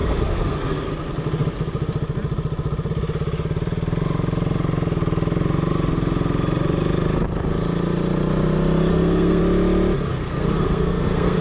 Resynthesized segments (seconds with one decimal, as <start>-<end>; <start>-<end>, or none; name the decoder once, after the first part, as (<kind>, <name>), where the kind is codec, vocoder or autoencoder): 0.0-0.9 (codec, SNAC); 8.9-9.4; 10.1-11.4